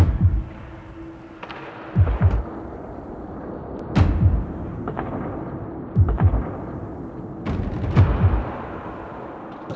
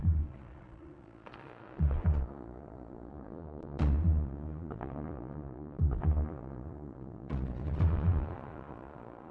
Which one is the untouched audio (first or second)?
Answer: first